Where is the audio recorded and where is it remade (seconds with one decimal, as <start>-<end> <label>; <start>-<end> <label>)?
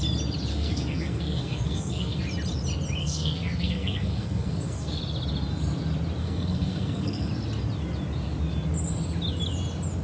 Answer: 0.0-0.5 recorded; 0.5-2.2 remade; 2.2-3.0 recorded; 3.0-5.0 remade; 5.0-6.2 recorded; 6.2-7.3 remade; 7.3-10.0 recorded